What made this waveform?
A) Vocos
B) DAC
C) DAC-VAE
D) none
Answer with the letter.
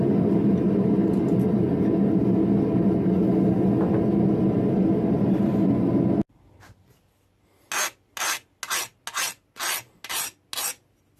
D